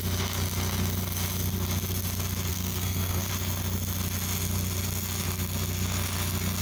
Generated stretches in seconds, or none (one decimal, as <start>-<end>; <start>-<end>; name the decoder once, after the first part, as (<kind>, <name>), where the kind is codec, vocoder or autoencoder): 2.5-3.3 (codec, SNAC)